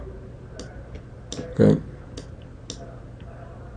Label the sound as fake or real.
real